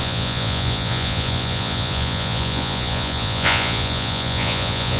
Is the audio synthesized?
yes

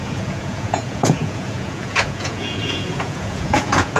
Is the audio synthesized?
yes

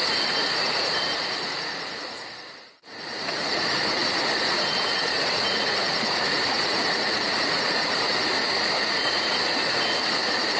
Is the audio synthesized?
yes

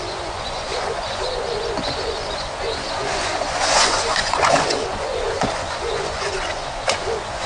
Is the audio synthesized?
yes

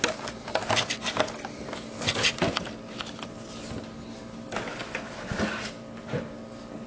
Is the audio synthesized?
no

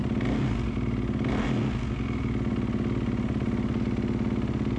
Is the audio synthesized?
no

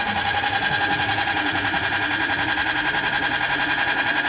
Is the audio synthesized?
yes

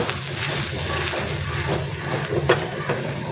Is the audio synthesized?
no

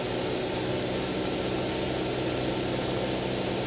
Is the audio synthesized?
no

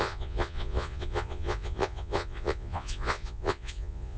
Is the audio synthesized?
yes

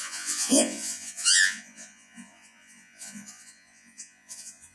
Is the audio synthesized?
yes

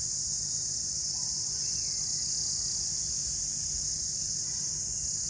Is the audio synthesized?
no